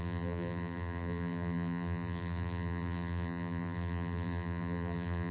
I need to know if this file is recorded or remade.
remade